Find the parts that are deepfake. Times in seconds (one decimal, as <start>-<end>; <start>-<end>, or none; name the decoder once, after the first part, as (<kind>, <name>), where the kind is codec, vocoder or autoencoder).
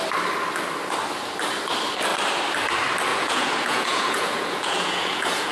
3.1-5.5 (vocoder, Vocos)